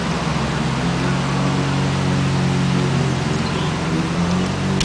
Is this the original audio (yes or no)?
yes